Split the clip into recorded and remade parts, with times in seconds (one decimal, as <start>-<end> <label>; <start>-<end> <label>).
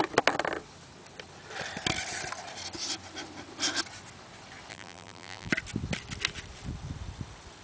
0.0-4.7 recorded; 4.7-5.5 remade; 5.5-7.6 recorded